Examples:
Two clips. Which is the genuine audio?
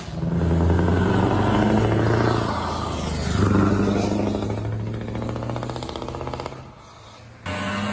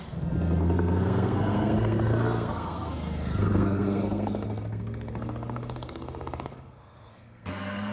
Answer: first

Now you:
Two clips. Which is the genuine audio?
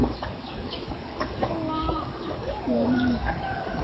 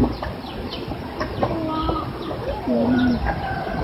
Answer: second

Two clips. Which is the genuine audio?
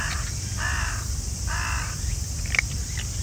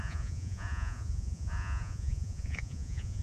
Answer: first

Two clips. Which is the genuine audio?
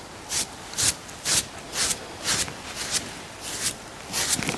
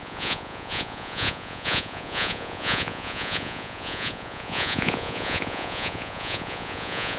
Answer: first